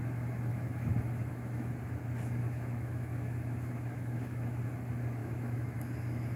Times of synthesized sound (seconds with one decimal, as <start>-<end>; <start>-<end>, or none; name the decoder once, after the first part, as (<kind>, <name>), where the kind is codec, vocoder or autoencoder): 0.5-1.7 (autoencoder, DAC-VAE); 2.4-4.6; 5.2-6.4